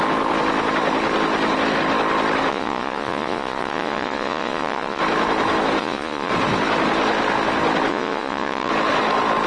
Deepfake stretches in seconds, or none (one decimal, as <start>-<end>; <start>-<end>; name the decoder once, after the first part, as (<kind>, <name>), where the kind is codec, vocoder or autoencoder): 2.5-5.0 (vocoder, Vocos); 5.8-6.3; 7.9-8.7